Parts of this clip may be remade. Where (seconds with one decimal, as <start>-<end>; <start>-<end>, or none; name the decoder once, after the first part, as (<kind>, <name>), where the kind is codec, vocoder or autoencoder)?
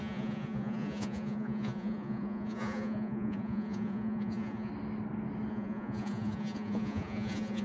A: 0.0-4.7 (vocoder, Vocos); 5.5-7.6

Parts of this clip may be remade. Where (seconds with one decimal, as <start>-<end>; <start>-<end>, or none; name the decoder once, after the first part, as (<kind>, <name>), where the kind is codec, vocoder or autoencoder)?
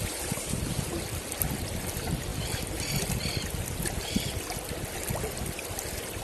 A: none